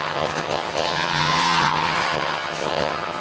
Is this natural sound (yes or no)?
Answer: no